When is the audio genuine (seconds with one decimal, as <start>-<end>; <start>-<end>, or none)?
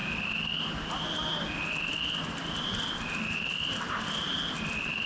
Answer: 0.0-5.1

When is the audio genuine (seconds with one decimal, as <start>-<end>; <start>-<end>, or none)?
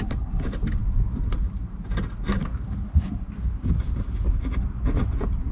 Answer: 0.0-5.5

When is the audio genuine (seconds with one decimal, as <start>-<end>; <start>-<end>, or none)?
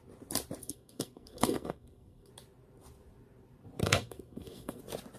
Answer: 0.0-0.6; 2.3-3.8; 4.8-5.2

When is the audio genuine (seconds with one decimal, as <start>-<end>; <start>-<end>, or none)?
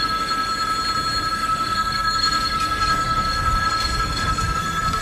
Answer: 0.5-1.3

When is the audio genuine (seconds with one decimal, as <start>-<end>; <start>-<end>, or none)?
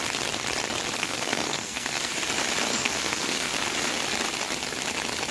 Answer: 0.0-1.0; 2.1-2.7; 3.9-5.3